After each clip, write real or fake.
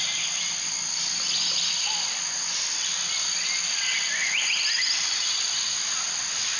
real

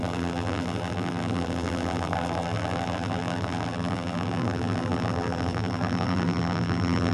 fake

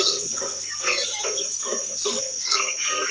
fake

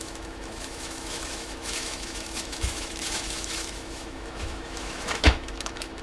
fake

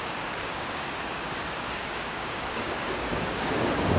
fake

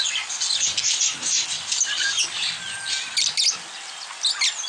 real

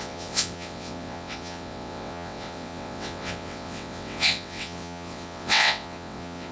fake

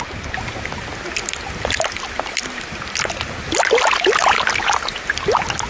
real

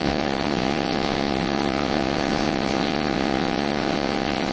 fake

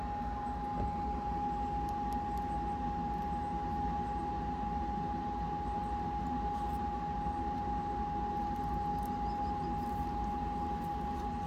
real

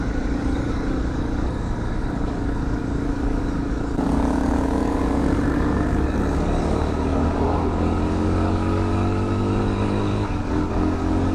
fake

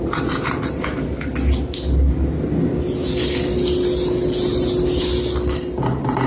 real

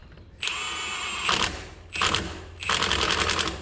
real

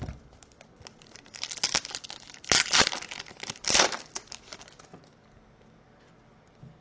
real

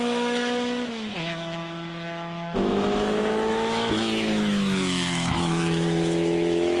fake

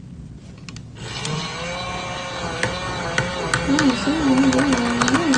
real